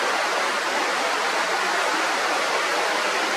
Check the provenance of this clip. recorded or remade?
recorded